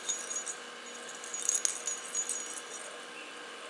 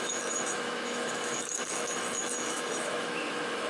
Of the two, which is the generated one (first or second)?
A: second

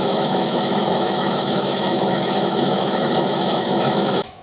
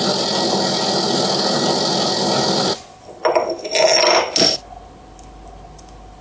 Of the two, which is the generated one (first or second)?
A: first